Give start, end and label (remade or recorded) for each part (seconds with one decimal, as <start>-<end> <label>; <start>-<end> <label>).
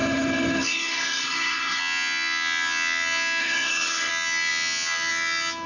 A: 0.0-1.8 remade; 1.8-3.4 recorded; 3.4-4.1 remade; 4.1-5.7 recorded